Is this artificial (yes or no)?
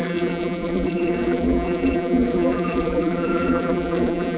yes